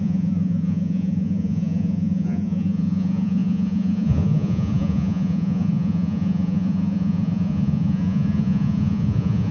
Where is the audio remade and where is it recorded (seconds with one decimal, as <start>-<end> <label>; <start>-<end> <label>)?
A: 0.0-9.5 remade